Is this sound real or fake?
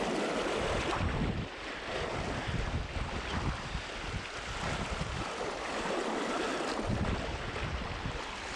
real